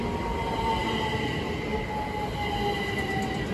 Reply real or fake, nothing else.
real